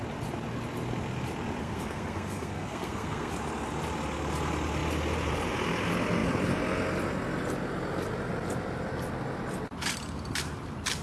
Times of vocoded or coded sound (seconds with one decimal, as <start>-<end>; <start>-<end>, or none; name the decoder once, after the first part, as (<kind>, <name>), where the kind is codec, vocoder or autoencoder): 1.6-3.3 (codec, SNAC)